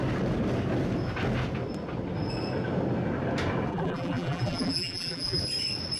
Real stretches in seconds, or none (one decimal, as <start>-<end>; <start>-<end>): 0.0-3.7; 5.4-6.0

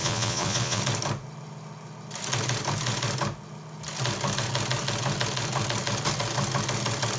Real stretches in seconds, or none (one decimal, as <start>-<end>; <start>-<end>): 0.8-7.2

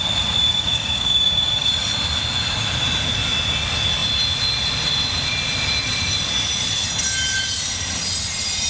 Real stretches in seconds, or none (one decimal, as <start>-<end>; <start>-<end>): 0.0-0.5; 1.7-8.7

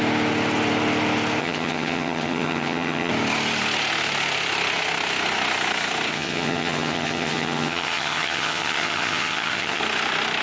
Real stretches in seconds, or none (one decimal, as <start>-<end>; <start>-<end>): 0.0-1.4; 3.1-6.1; 9.8-10.4